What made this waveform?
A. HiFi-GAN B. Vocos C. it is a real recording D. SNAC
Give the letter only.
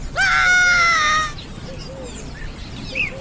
C